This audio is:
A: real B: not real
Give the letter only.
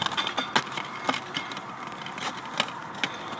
A